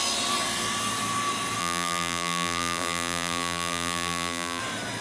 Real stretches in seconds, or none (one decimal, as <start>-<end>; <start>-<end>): 0.0-1.6; 4.6-5.0